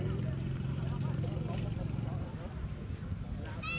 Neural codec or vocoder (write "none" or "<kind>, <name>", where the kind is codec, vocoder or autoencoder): none